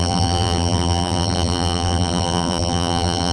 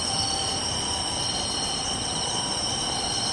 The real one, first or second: second